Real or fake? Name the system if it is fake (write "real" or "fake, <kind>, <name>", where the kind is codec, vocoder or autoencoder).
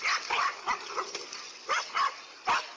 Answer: real